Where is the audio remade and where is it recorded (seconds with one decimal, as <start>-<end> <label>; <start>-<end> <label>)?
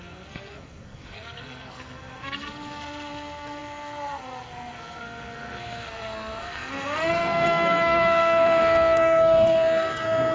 0.0-10.3 remade